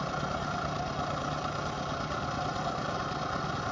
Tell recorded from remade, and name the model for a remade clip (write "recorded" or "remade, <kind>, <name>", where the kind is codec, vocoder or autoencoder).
recorded